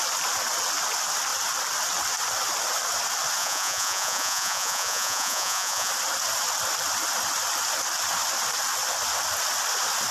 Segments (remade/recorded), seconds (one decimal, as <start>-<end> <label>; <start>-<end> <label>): 0.0-3.4 recorded; 3.4-5.9 remade; 5.9-10.1 recorded